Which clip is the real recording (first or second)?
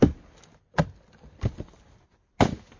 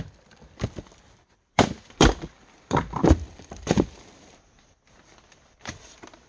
first